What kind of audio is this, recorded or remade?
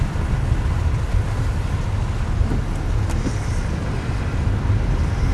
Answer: recorded